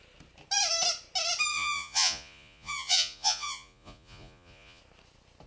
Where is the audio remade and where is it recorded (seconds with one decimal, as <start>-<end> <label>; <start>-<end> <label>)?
0.0-1.5 recorded; 1.5-4.8 remade; 4.8-5.5 recorded